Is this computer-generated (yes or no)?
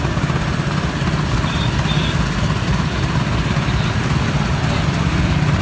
no